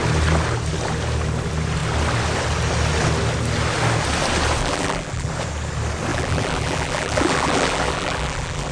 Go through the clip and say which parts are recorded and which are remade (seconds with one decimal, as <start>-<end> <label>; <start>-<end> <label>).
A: 0.0-4.6 recorded; 4.6-5.3 remade; 5.3-6.1 recorded; 6.1-8.7 remade